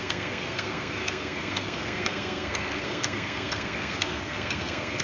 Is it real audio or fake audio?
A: fake